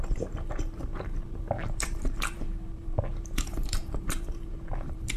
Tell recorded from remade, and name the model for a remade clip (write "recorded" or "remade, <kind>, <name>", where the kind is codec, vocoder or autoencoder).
remade, vocoder, BigVGAN v2